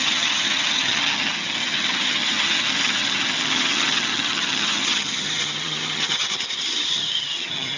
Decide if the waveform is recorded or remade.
remade